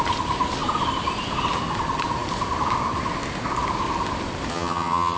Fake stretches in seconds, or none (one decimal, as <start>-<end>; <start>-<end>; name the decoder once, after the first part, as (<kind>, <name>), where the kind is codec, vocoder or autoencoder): 4.5-5.2 (vocoder, HiFi-GAN)